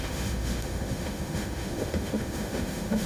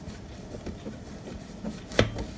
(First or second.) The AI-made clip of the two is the first